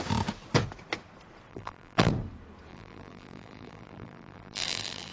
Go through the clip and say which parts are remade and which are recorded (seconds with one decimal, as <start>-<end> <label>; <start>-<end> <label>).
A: 0.0-1.5 recorded; 1.5-2.1 remade; 2.1-2.7 recorded; 2.7-5.1 remade